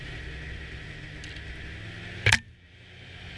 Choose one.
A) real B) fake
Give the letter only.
A